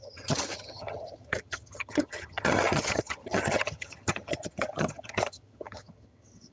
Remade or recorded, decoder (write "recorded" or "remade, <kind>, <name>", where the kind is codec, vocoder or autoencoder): remade, vocoder, HiFi-GAN